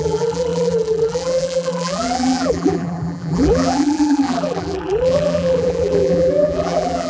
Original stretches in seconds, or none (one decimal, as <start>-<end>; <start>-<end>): none